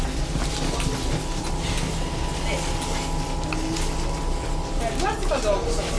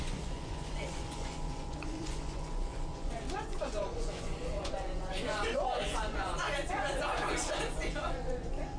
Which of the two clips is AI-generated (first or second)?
second